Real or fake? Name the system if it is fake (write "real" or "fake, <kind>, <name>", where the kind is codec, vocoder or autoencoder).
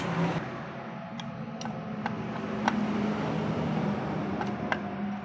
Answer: real